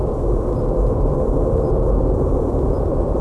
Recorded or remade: remade